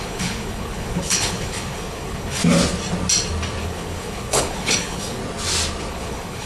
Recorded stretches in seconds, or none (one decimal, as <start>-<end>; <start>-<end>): 2.4-3.6; 5.2-5.9